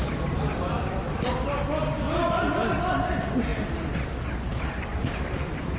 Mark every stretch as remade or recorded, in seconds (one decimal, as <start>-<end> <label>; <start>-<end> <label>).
0.0-5.8 recorded